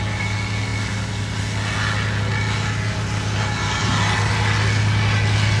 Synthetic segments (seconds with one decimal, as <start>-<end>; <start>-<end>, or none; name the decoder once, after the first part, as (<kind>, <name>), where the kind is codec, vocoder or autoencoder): none